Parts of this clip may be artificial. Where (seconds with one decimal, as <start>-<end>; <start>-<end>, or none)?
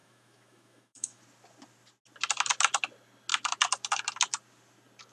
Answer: 0.0-1.2